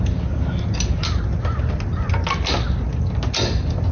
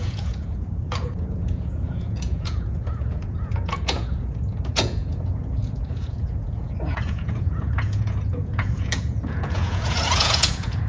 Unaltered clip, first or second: first